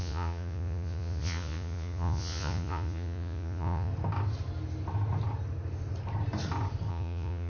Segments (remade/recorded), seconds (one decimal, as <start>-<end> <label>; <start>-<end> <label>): 0.0-3.9 remade; 3.9-6.9 recorded; 6.9-7.5 remade